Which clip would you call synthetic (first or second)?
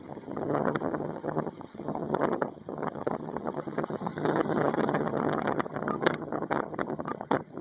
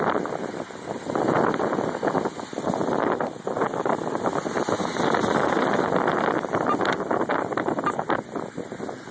first